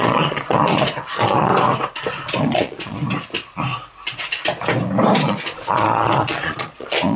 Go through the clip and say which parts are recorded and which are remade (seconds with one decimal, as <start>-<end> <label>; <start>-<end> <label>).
0.0-1.5 remade; 1.5-2.4 recorded; 2.4-3.0 remade; 3.0-5.2 recorded; 5.2-7.2 remade